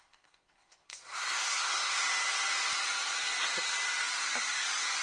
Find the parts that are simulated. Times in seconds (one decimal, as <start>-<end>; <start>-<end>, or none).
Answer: 0.0-2.0